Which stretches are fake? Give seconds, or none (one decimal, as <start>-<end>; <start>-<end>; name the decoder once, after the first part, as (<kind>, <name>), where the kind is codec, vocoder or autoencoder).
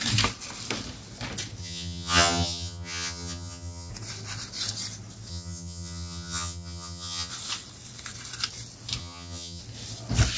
1.6-3.9 (vocoder, HiFi-GAN); 5.3-7.3; 9.0-9.6